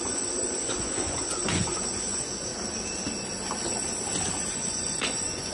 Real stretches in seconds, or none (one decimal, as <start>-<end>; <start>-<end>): 2.5-4.5